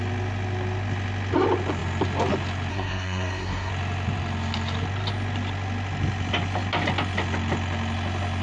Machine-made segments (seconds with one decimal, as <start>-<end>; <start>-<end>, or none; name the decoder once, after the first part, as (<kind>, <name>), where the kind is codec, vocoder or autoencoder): 2.7-3.7 (codec, SNAC)